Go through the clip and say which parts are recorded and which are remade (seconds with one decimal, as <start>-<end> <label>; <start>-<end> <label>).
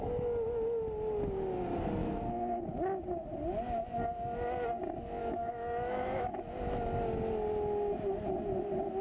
0.0-2.0 recorded; 2.0-2.6 remade; 2.6-5.2 recorded; 5.2-6.4 remade; 6.4-9.0 recorded